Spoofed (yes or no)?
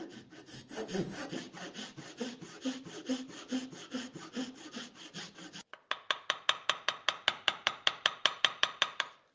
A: no